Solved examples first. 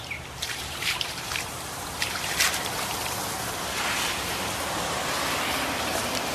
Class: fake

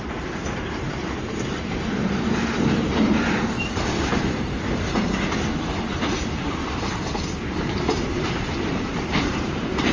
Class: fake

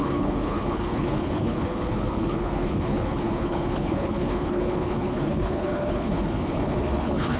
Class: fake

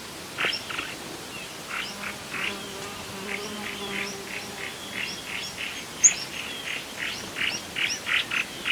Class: real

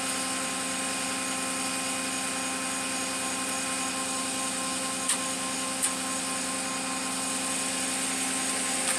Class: real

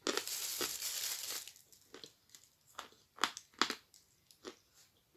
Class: real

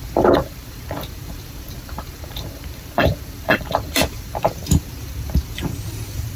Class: fake